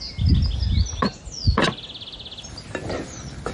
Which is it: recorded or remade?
recorded